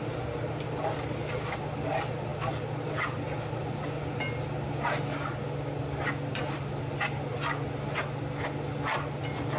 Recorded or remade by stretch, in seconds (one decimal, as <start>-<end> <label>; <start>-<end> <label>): 0.0-9.6 recorded